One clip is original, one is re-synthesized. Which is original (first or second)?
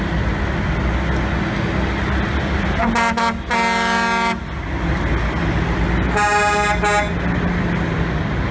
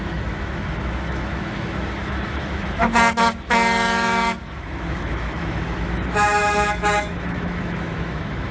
first